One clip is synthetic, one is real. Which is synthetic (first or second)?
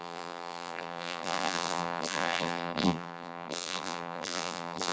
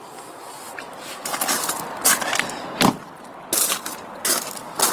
first